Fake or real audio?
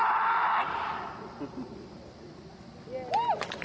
real